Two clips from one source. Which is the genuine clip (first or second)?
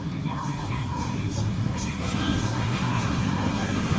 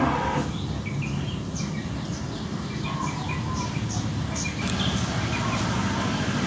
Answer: second